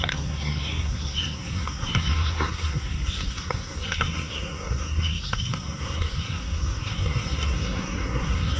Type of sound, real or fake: fake